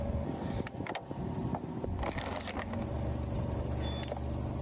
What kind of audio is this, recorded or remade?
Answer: recorded